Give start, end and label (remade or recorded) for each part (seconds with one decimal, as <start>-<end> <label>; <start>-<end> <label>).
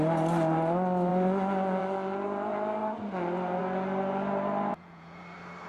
0.0-4.7 recorded; 4.7-5.2 remade; 5.2-5.7 recorded